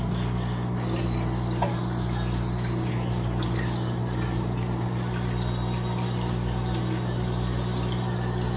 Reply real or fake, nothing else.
real